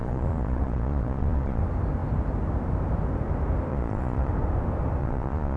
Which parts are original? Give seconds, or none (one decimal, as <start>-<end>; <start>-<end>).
1.6-3.7; 4.3-5.0